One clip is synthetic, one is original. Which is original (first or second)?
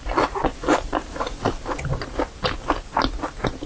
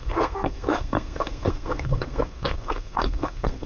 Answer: first